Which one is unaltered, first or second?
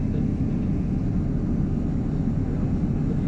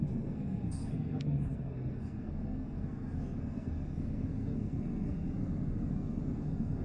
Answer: first